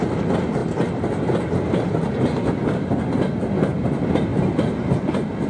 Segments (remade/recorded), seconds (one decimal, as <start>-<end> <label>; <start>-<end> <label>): 0.0-5.5 recorded